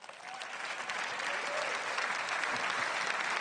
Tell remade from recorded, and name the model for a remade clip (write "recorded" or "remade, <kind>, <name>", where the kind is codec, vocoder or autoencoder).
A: recorded